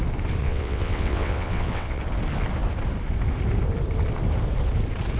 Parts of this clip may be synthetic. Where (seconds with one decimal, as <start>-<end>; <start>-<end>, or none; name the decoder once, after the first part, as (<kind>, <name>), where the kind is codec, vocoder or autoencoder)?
0.4-2.0 (vocoder, WaveNeXt)